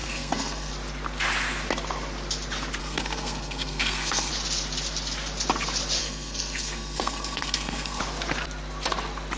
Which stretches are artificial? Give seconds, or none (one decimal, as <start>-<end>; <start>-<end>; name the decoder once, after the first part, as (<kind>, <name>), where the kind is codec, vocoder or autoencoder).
0.0-0.7 (codec, SNAC); 2.8-4.3; 6.0-8.0